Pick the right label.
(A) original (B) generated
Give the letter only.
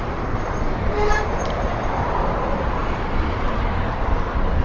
B